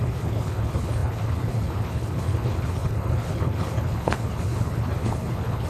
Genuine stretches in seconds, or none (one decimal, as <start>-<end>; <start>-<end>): none